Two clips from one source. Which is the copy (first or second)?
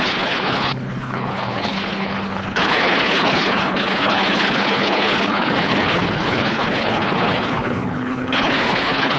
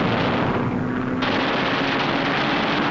first